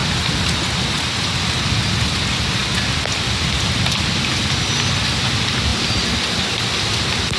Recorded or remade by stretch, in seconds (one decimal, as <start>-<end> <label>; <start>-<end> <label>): 0.0-7.4 recorded